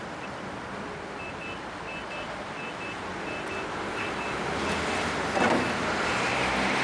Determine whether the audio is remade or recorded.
recorded